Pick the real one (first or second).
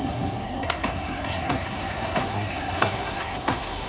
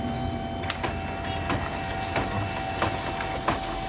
second